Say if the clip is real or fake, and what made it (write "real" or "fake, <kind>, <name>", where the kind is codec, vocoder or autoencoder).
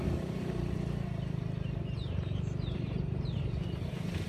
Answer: fake, vocoder, BigVGAN v2